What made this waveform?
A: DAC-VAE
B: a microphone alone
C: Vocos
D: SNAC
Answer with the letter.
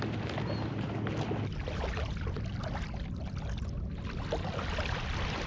B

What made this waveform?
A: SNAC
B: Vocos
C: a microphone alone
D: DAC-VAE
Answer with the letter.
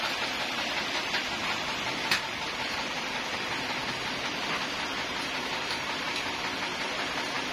C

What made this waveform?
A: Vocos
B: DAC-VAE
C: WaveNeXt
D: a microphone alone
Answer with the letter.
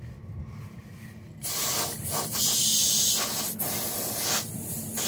D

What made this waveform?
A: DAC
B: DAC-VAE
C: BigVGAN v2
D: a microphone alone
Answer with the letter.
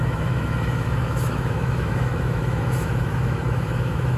B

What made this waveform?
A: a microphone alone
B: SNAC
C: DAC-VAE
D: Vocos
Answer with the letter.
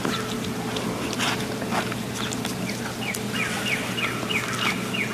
A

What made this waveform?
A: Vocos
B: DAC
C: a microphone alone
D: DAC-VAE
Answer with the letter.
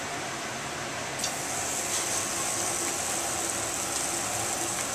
C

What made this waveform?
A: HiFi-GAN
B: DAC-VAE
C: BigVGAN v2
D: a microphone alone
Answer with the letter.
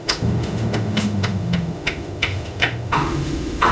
B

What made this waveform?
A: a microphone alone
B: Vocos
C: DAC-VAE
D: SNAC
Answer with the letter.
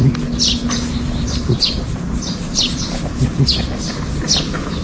A